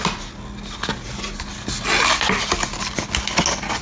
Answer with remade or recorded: recorded